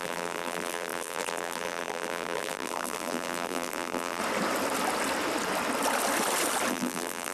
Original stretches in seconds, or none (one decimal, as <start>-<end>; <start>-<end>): 4.2-6.7